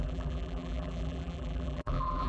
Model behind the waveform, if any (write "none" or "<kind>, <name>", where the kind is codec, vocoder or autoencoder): vocoder, BigVGAN v2